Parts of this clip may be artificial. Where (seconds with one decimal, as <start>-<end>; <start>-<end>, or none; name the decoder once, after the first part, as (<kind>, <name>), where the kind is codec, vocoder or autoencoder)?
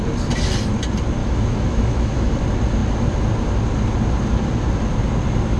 1.2-2.4 (autoencoder, DAC-VAE)